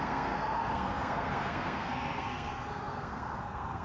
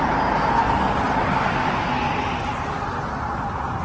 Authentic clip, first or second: second